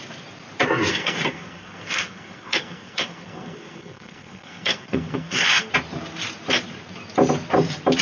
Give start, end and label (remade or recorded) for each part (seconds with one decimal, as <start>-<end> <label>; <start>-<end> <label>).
0.0-0.9 recorded; 0.9-5.7 remade; 5.7-8.0 recorded